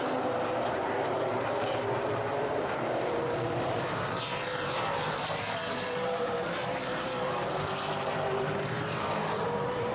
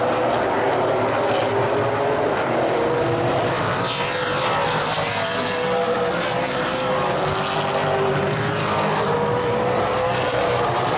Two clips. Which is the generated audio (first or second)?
first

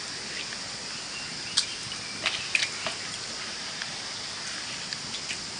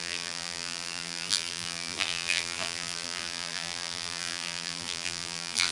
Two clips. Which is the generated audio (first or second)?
second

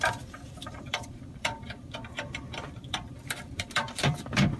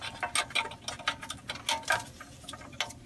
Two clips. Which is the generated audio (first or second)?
first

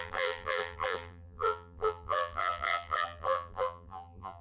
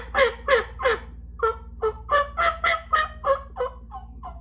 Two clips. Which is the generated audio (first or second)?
first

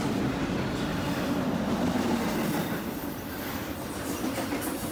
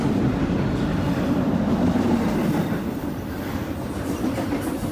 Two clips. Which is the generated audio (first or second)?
second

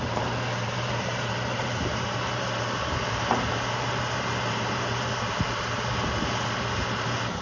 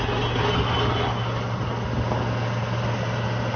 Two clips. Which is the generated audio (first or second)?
first